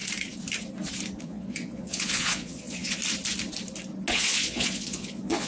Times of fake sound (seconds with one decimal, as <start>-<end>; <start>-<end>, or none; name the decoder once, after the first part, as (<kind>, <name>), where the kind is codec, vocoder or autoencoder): 1.2-3.0 (vocoder, Vocos); 4.1-5.5